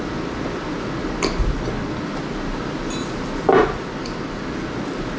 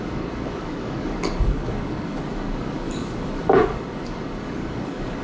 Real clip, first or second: first